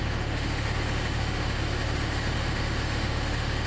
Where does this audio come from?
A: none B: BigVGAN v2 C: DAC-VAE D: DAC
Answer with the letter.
C